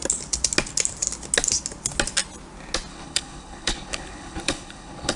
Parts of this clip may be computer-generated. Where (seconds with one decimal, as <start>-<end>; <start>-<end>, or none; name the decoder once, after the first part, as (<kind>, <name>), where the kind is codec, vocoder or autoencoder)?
2.9-5.2 (codec, HILCodec)